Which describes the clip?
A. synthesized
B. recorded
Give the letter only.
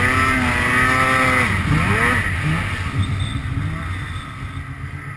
B